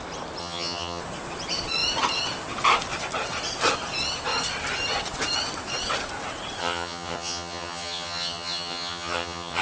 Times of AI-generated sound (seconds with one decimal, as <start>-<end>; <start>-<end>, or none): 0.4-1.0; 6.6-9.6